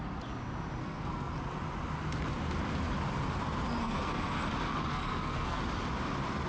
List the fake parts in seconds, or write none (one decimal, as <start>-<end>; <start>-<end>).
0.8-1.3; 3.8-4.4; 4.9-5.6